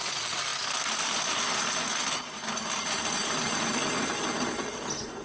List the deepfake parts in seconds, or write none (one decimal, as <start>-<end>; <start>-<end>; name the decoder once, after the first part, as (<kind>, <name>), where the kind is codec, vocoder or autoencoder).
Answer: 3.2-3.7 (vocoder, BigVGAN v2)